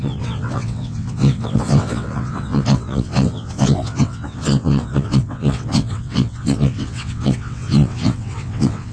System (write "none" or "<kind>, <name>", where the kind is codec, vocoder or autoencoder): vocoder, WaveNeXt